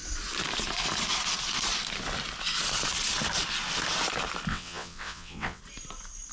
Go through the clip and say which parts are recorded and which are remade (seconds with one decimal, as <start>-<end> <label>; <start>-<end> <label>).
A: 0.0-4.5 recorded; 4.5-5.6 remade; 5.6-6.3 recorded